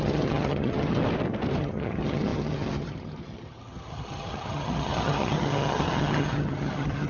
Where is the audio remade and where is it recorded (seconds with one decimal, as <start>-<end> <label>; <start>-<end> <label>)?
0.0-1.0 remade; 1.0-1.6 recorded; 1.6-7.1 remade